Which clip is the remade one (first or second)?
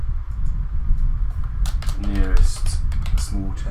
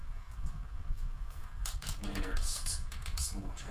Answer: second